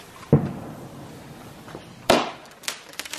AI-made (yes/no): no